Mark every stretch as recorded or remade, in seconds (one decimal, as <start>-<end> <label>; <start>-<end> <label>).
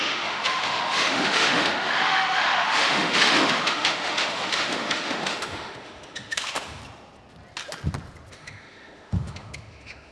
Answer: 0.0-6.8 remade; 6.8-8.3 recorded; 8.3-10.1 remade